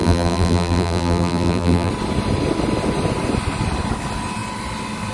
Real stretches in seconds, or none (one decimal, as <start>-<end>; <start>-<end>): 1.9-5.1